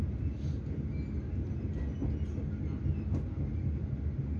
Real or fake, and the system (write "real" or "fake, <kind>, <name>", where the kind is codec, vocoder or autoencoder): real